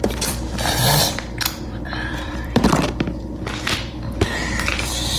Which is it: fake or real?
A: fake